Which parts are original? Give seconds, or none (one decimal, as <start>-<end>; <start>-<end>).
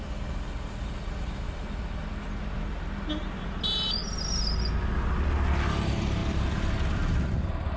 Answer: 0.0-7.8